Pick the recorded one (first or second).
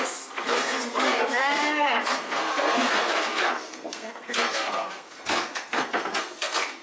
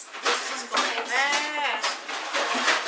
second